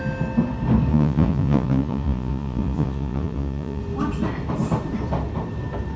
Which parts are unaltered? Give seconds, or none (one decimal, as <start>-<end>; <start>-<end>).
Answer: 0.0-0.9; 3.8-6.0